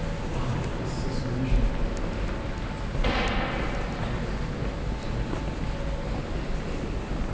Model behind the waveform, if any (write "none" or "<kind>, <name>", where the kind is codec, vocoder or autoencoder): none